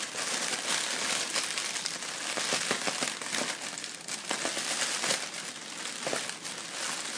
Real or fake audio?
real